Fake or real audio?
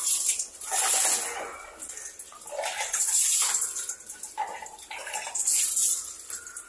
real